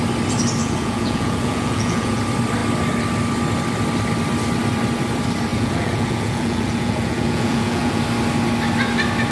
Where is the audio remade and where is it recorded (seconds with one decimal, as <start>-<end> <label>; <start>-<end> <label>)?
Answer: 0.0-0.6 recorded; 0.6-2.2 remade; 2.2-5.5 recorded; 5.5-8.0 remade; 8.0-9.3 recorded